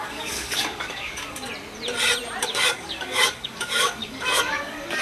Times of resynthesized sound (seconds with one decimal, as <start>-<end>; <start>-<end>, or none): 0.0-1.5; 2.4-5.0